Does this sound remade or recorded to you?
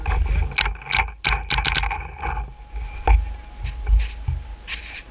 recorded